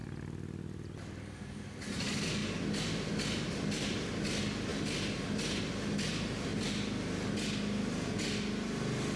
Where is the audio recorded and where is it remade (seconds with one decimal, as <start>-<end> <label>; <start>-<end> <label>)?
0.0-9.2 recorded